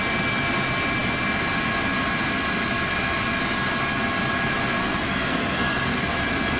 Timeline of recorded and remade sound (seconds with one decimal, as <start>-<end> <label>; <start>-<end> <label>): 0.0-4.8 recorded; 4.8-6.1 remade; 6.1-6.6 recorded